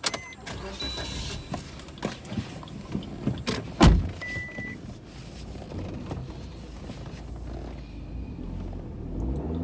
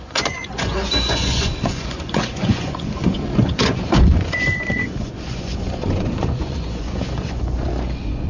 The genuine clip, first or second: first